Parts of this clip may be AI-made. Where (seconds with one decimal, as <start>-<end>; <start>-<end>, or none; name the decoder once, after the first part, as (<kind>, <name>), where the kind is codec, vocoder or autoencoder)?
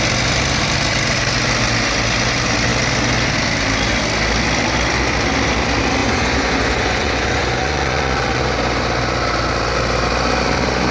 6.0-8.4 (vocoder, Vocos)